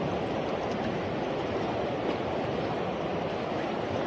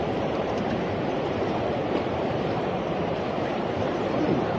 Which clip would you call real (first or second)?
first